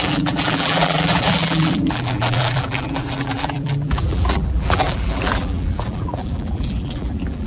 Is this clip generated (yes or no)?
yes